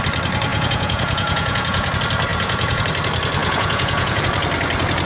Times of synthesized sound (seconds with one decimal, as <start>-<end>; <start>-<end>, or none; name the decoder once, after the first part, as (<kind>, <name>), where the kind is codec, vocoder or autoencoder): 0.5-1.9 (vocoder, Vocos); 2.3-2.8; 3.4-4.2